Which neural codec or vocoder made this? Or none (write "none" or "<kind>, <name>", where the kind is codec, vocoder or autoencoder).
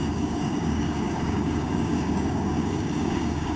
codec, DAC